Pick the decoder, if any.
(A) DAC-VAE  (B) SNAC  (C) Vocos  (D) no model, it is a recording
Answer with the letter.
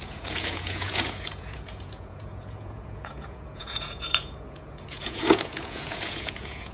C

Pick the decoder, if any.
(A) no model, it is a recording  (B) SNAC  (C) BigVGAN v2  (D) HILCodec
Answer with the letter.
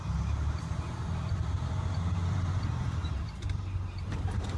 C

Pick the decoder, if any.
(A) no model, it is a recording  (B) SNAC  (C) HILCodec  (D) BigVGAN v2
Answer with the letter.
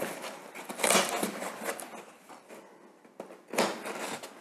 A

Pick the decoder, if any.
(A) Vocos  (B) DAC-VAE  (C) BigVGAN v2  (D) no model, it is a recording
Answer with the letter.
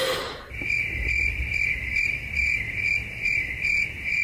D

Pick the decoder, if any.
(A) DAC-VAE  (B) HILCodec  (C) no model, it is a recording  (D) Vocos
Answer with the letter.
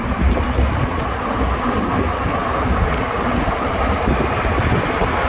C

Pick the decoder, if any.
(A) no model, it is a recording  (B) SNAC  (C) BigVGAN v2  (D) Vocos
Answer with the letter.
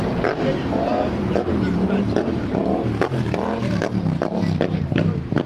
C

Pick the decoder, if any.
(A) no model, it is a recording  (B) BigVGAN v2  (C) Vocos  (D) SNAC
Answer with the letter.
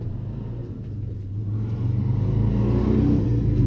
A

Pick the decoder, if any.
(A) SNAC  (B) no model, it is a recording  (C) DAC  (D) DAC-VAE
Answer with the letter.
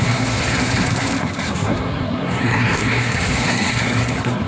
A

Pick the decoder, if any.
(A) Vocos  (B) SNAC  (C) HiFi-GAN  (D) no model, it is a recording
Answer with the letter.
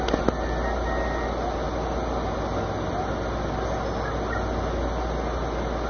D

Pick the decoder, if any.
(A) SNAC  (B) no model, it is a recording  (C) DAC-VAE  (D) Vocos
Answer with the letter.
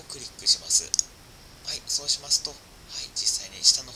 B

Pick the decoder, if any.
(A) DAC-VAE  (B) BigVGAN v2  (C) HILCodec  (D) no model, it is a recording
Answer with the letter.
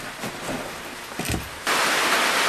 D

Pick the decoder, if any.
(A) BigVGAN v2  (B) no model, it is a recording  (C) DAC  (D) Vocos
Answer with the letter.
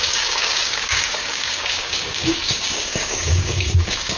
C